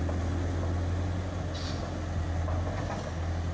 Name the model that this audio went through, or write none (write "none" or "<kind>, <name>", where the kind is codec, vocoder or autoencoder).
none